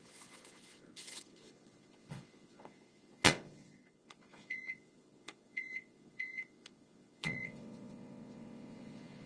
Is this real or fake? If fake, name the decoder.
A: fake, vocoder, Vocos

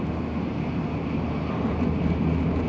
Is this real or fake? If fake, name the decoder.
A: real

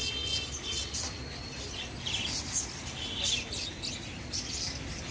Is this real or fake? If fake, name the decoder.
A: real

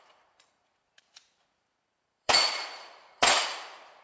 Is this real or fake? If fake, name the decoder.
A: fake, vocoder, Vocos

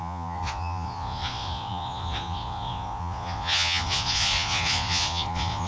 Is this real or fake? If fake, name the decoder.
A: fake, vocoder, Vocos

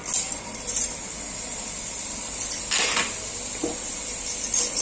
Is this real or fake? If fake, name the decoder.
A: real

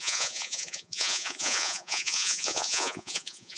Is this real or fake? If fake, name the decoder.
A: fake, vocoder, Vocos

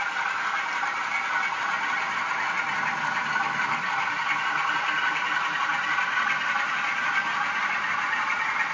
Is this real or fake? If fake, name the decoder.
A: real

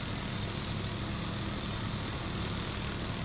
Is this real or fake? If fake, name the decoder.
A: real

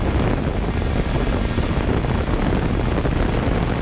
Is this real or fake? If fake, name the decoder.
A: real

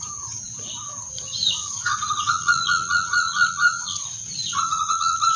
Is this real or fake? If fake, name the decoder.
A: fake, vocoder, Vocos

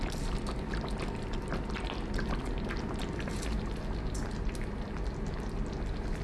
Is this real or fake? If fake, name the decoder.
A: real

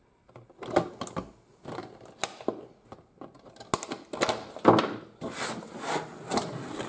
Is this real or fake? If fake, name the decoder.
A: real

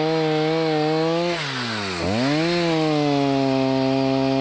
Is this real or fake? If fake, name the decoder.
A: real